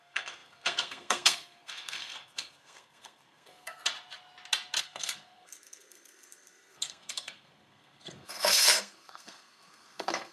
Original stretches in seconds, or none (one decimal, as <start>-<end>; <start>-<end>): 3.8-4.8